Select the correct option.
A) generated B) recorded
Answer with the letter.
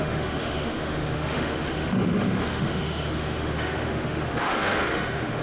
A